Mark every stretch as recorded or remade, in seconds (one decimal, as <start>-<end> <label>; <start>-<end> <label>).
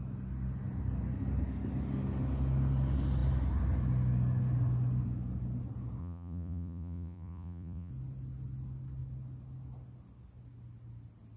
0.0-6.0 recorded; 6.0-7.9 remade; 7.9-11.4 recorded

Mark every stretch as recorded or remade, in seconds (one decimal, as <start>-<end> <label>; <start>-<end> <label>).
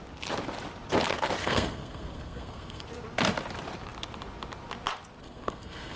0.0-1.4 recorded; 1.4-2.8 remade; 2.8-5.2 recorded; 5.2-6.0 remade